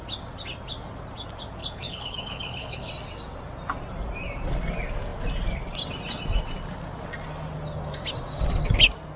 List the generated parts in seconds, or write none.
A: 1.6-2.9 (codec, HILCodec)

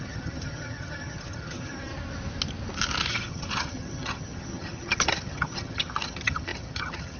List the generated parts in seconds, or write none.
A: 0.0-1.9 (vocoder, HiFi-GAN); 3.1-7.2

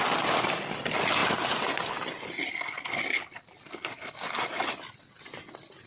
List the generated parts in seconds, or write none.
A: none

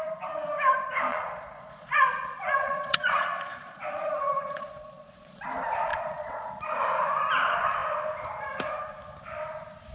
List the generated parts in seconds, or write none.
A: 1.1-5.4 (vocoder, Vocos); 5.9-6.5

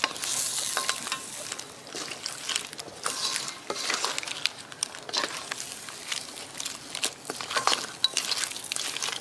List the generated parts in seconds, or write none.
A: none

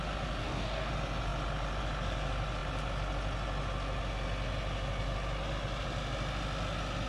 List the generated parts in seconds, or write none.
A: 0.4-0.9 (codec, DAC)

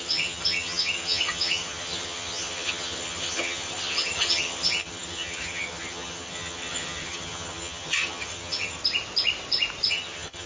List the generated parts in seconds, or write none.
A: 0.0-8.8 (vocoder, HiFi-GAN); 9.9-10.5

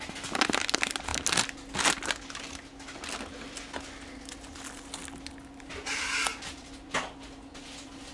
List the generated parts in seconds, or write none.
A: none